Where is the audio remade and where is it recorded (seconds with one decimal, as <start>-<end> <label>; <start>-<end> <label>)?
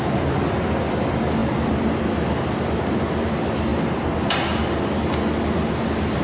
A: 0.0-6.2 recorded